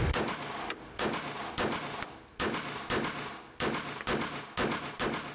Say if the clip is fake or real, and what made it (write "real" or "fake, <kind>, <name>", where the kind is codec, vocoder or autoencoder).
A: real